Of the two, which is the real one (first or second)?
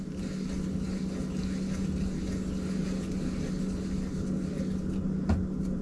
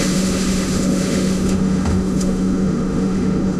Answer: first